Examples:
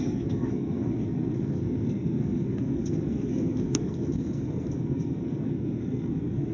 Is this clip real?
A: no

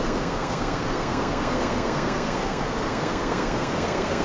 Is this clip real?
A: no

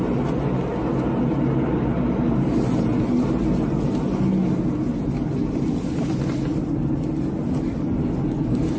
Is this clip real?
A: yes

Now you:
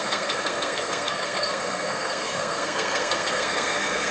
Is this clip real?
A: no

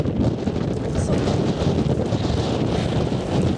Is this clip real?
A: yes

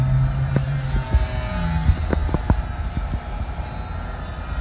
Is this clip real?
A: yes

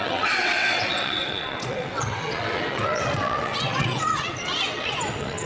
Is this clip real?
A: no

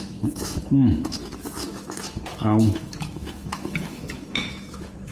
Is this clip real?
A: no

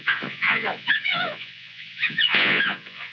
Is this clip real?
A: no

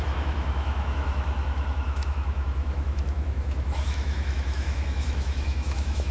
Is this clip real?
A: no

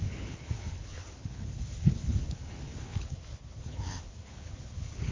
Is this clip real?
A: no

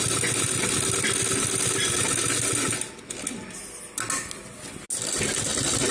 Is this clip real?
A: yes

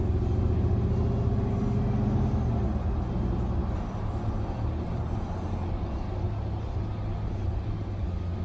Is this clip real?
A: yes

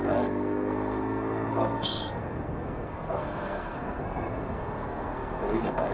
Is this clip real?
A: no